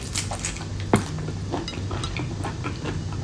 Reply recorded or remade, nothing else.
recorded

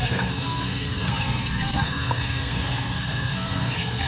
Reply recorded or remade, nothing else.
remade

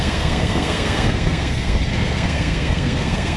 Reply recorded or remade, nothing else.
remade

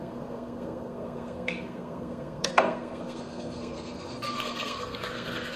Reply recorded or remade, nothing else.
remade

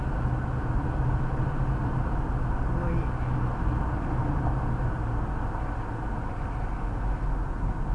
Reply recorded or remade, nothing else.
recorded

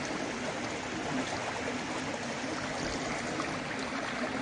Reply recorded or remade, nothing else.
recorded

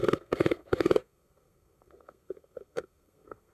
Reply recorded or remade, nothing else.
remade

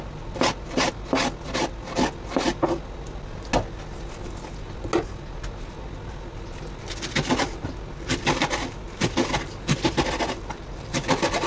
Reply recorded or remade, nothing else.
recorded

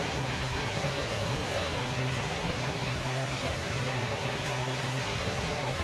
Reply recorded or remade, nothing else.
remade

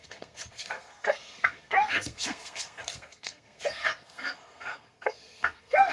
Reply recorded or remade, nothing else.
remade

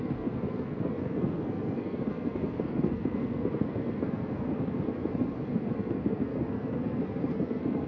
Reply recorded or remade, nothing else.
remade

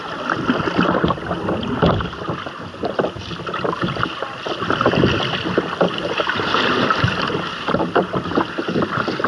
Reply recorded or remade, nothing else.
recorded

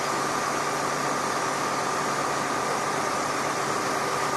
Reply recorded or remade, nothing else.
recorded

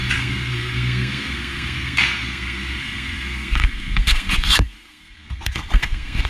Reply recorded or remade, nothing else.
remade